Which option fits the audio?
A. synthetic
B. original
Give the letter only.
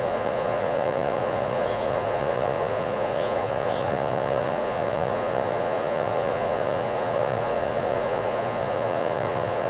A